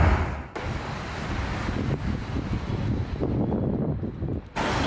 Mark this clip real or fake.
real